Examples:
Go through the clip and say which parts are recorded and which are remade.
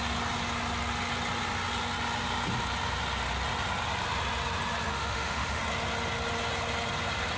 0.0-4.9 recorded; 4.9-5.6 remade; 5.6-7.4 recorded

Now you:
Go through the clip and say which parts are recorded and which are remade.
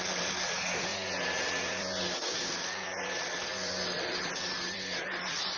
0.0-5.6 remade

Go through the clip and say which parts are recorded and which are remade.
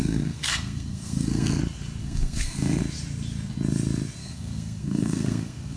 0.0-1.6 remade; 1.6-2.0 recorded; 2.0-2.8 remade; 2.8-4.2 recorded; 4.2-5.8 remade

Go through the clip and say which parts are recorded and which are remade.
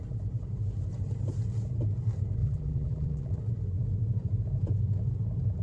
0.0-2.4 recorded; 2.4-3.4 remade; 3.4-5.6 recorded